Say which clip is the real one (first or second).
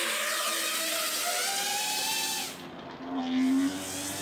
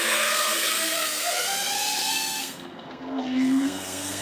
first